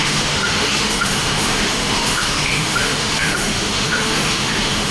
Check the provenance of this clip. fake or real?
fake